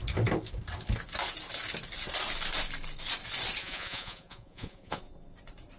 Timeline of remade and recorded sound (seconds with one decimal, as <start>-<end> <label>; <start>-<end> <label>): 0.0-3.6 recorded; 3.6-5.0 remade; 5.0-5.8 recorded

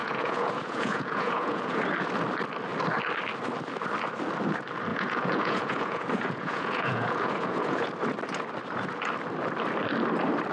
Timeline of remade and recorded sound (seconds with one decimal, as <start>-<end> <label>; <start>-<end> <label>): 0.0-1.8 remade; 1.8-4.9 recorded; 4.9-7.9 remade; 7.9-10.5 recorded

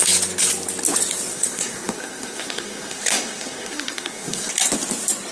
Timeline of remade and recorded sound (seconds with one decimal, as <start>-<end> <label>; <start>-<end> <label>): 0.0-1.3 recorded; 1.3-4.5 remade; 4.5-5.3 recorded

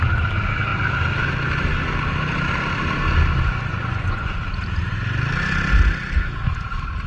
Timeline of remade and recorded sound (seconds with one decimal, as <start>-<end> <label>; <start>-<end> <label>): 0.0-3.7 recorded; 3.7-4.4 remade; 4.4-7.1 recorded